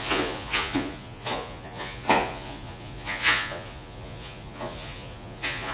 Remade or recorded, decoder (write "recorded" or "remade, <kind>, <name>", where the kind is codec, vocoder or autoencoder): remade, vocoder, Vocos